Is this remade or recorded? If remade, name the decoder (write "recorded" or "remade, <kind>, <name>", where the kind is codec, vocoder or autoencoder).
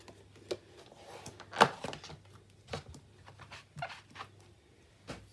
recorded